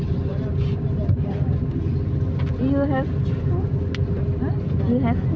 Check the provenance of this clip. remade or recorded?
recorded